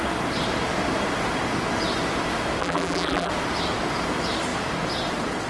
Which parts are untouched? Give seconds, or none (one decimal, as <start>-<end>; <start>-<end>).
0.0-2.6; 3.3-5.5